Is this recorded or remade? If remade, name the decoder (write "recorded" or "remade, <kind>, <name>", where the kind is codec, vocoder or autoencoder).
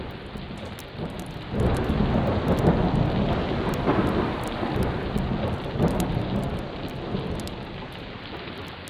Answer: recorded